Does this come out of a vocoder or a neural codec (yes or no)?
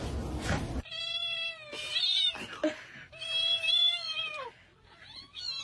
no